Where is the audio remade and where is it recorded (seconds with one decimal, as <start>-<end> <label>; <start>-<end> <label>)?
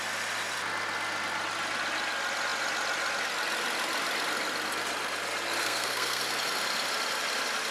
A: 0.0-5.6 recorded; 5.6-6.2 remade; 6.2-7.7 recorded